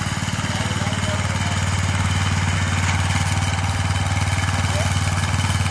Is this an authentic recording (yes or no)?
yes